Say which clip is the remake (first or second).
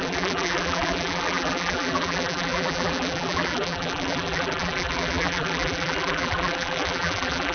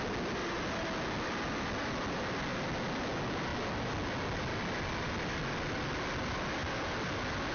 first